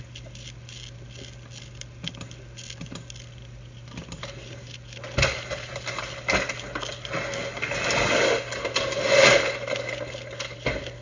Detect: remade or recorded recorded